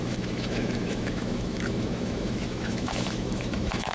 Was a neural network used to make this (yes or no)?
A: yes